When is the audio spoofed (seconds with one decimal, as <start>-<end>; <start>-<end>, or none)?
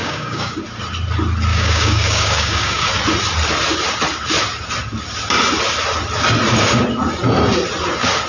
0.0-0.6; 1.5-2.9